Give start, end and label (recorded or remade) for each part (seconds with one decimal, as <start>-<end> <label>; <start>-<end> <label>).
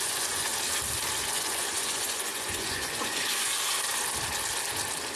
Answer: 0.0-0.5 remade; 0.5-1.3 recorded; 1.3-3.5 remade; 3.5-5.1 recorded